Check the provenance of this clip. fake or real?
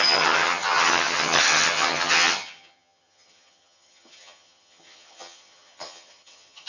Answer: fake